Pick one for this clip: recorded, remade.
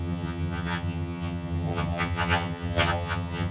remade